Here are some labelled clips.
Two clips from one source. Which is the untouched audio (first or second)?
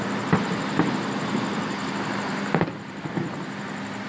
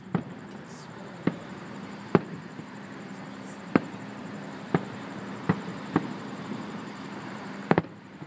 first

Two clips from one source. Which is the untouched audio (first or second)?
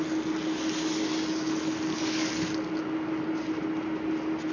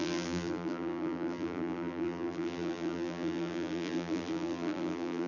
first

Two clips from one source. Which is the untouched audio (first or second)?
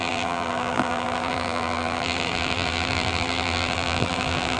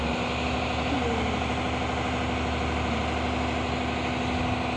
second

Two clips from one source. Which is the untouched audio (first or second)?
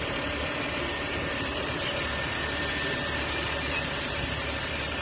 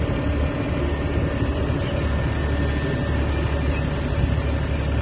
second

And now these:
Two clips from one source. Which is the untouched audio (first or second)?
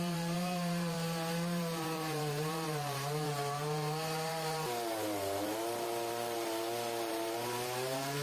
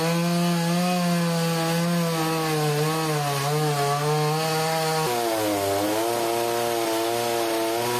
second